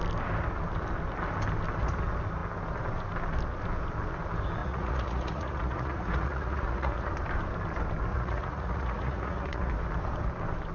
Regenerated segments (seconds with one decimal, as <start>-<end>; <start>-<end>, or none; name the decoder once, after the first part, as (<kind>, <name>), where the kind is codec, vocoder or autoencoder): 4.6-7.1 (vocoder, Vocos); 8.1-9.7

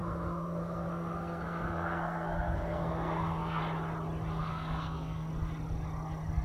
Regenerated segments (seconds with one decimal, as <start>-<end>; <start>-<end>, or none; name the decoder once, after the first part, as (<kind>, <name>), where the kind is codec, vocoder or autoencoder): 0.0-3.6 (codec, SNAC); 4.4-5.3

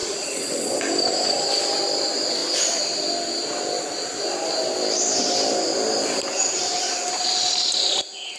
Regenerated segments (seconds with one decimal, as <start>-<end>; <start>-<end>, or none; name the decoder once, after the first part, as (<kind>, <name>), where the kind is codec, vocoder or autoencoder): 0.0-0.8 (vocoder, Vocos)